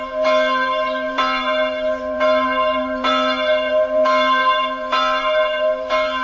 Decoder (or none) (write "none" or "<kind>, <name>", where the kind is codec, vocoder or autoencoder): vocoder, BigVGAN v2